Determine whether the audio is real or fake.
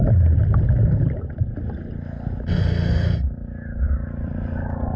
real